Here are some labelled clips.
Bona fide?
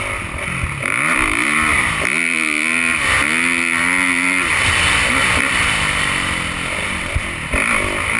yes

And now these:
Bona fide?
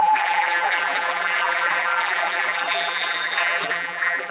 no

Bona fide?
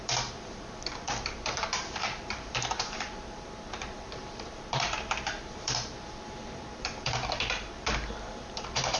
no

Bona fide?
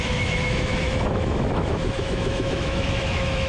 no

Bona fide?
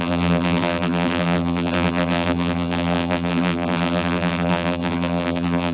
no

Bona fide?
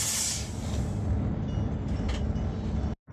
yes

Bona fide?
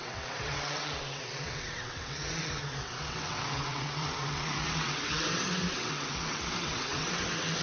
no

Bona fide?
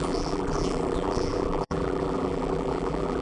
no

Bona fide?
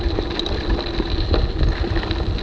yes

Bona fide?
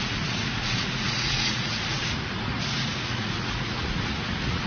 no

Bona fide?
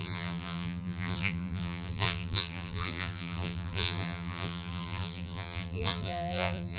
no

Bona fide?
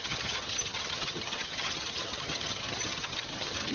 no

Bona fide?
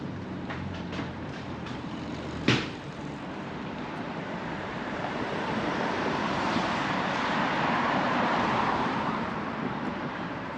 no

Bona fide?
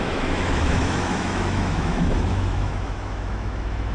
no